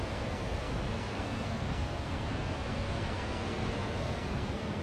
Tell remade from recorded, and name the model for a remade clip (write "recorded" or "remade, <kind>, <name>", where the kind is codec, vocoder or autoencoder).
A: remade, codec, SNAC